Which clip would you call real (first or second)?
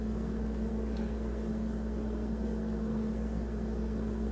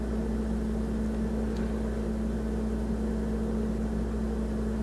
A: second